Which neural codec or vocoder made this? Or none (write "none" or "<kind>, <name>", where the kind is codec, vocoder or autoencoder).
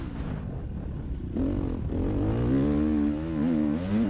none